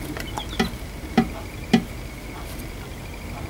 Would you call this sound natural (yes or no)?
yes